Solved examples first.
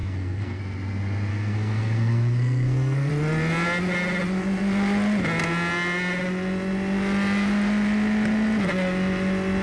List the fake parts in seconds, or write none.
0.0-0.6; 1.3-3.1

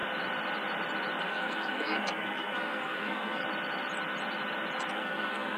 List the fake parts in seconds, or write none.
1.2-3.4; 4.9-5.6

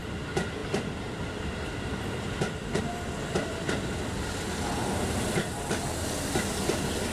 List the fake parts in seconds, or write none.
none